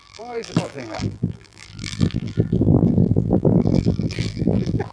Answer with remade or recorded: remade